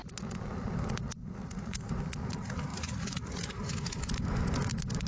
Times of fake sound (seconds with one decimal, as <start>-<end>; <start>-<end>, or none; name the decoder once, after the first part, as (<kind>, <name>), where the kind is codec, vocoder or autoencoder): 1.2-1.9 (vocoder, Vocos); 2.7-3.5